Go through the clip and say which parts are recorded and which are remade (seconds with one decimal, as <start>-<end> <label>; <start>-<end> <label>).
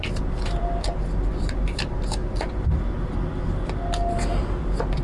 0.0-2.2 remade; 2.2-4.4 recorded; 4.4-5.0 remade